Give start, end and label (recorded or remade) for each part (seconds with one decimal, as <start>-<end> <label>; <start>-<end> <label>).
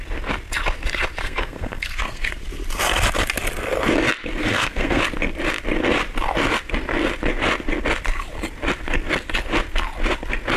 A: 0.0-1.2 recorded; 1.2-2.3 remade; 2.3-4.4 recorded; 4.4-5.0 remade; 5.0-10.6 recorded